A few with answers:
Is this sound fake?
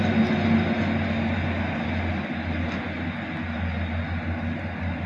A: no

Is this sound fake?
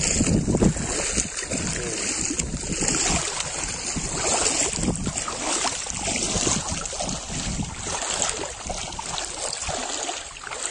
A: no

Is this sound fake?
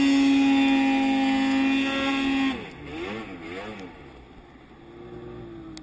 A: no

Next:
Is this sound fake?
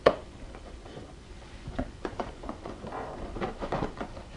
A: yes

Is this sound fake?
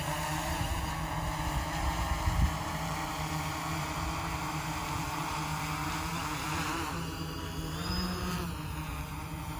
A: yes